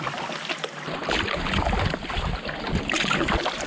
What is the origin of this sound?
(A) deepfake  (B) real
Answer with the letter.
B